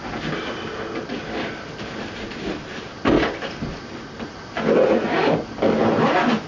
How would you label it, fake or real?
real